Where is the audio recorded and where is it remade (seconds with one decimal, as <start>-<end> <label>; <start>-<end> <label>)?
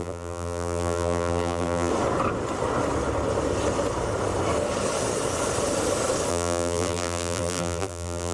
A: 0.0-1.9 remade; 1.9-6.3 recorded; 6.3-8.3 remade